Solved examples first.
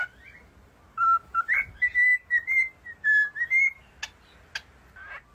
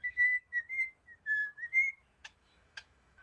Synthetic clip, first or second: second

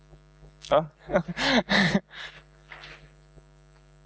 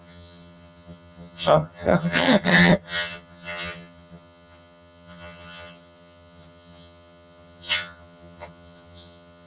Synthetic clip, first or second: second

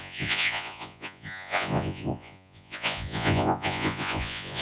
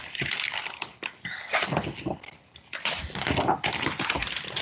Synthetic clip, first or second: first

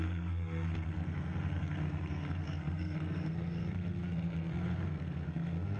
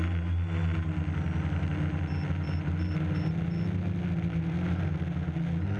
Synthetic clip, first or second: first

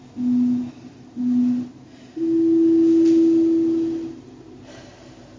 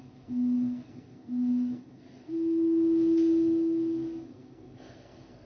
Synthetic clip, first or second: second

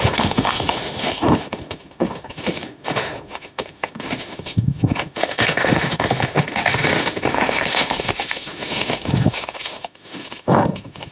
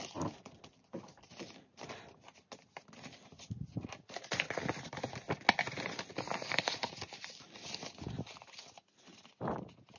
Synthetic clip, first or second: first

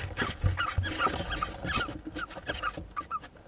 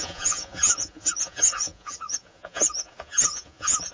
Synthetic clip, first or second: second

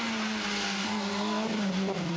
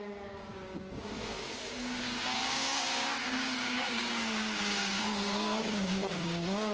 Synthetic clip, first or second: second